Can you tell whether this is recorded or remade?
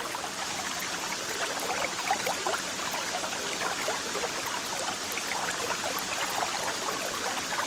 recorded